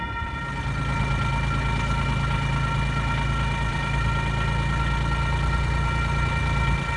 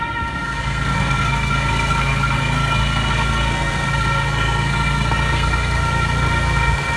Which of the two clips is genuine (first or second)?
first